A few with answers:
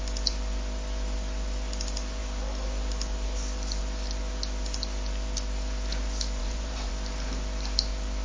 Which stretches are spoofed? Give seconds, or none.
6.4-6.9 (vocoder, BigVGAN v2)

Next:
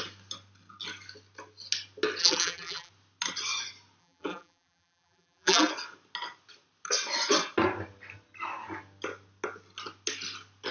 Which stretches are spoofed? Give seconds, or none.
2.2-2.9 (vocoder, BigVGAN v2); 4.0-5.7

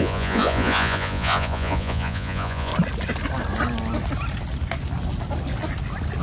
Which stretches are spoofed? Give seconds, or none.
0.0-2.7 (vocoder, Vocos)

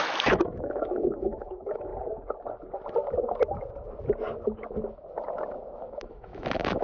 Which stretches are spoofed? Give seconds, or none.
0.0-1.9 (autoencoder, DAC-VAE); 5.9-6.8

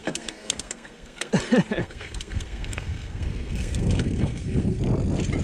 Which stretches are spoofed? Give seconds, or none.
0.0-1.3 (codec, SNAC); 1.8-4.8